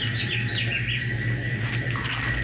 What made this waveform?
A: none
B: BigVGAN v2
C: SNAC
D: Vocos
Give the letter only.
A